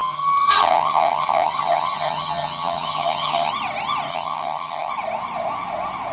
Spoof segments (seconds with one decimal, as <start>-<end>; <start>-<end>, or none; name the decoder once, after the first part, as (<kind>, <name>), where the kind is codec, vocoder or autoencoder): 0.0-3.5 (vocoder, HiFi-GAN); 4.1-4.9